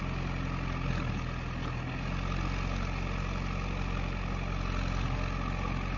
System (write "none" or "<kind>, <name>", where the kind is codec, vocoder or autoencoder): none